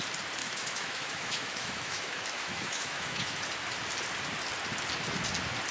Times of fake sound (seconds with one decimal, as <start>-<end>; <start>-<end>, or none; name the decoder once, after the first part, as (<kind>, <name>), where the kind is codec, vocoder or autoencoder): 0.4-3.4 (autoencoder, DAC-VAE)